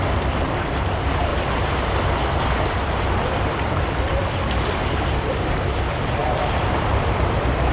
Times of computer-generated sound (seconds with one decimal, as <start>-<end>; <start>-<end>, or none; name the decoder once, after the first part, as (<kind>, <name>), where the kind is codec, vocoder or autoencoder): 0.0-1.3 (vocoder, BigVGAN v2); 3.4-7.7